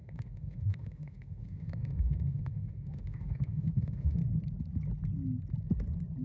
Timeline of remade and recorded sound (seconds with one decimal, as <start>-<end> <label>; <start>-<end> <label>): 0.0-4.2 remade; 4.2-6.2 recorded